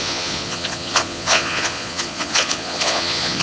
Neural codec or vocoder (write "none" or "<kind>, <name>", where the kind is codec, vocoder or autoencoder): vocoder, Vocos